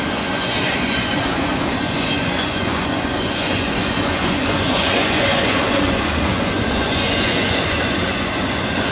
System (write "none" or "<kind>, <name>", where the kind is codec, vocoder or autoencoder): vocoder, Vocos